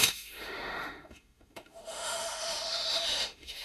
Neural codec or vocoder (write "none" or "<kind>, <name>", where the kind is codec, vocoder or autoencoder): autoencoder, DAC-VAE